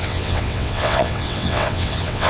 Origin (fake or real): fake